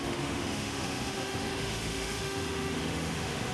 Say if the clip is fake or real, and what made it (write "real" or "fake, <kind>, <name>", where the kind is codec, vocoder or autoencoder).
fake, autoencoder, DAC-VAE